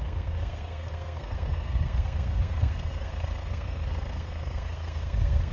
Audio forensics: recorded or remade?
remade